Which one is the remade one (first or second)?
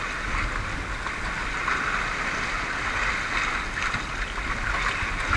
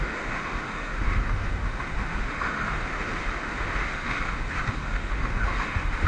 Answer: second